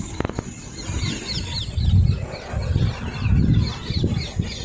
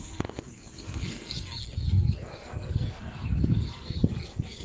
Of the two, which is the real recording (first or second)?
first